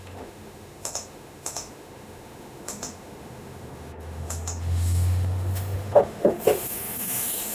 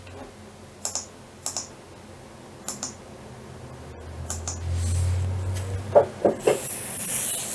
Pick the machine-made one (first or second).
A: first